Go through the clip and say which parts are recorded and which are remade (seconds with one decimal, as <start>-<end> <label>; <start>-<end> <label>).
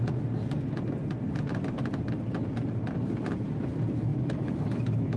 0.0-4.1 recorded; 4.1-5.2 remade